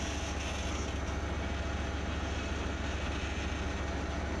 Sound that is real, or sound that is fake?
real